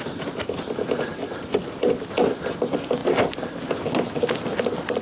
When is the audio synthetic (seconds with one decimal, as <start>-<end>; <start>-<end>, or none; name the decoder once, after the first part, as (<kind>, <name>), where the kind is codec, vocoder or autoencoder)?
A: 3.0-3.7 (vocoder, BigVGAN v2)